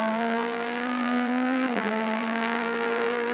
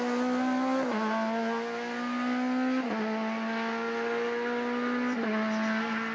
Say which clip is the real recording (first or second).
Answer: second